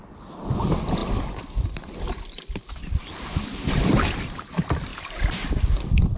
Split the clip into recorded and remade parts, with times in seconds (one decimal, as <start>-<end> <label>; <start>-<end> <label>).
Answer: 0.0-6.2 recorded